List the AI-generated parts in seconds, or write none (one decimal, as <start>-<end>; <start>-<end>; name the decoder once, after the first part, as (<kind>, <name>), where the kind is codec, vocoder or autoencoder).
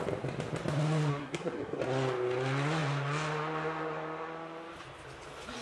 1.1-1.8 (codec, SNAC)